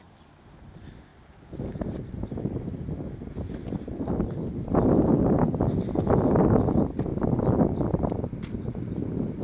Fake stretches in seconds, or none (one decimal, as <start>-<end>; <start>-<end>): none

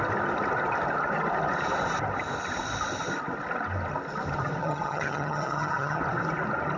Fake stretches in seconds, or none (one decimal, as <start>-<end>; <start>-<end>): 4.6-6.0